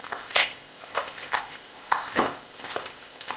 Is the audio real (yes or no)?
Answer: no